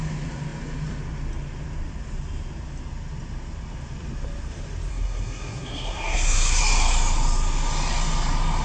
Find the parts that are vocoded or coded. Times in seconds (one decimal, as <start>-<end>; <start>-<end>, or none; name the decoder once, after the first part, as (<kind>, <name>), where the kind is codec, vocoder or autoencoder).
4.9-6.6 (codec, SNAC)